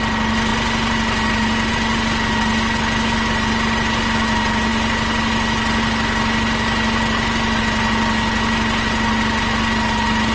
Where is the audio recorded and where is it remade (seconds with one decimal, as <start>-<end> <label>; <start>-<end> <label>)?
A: 0.0-10.3 recorded